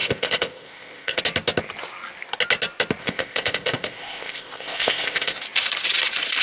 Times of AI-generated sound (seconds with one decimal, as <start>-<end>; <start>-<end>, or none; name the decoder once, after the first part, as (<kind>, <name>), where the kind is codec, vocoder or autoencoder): 0.0-1.2 (codec, ZipCodec); 3.0-5.4